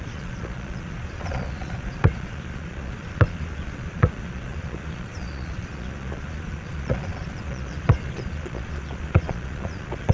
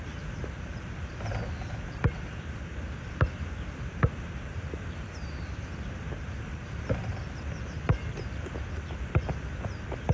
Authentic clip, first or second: second